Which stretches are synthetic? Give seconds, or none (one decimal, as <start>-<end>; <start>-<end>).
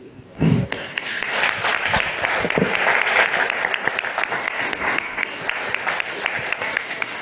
0.0-1.4; 4.3-5.4; 6.6-7.2